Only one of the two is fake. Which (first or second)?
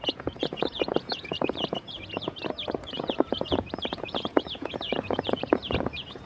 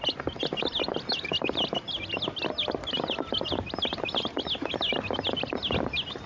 first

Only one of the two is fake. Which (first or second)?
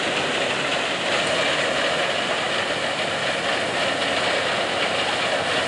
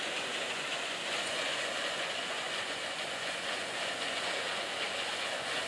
second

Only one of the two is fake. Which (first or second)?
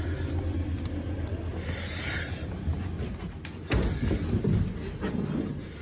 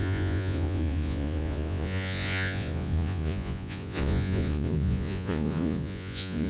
second